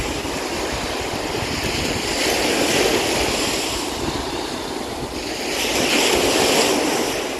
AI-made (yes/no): no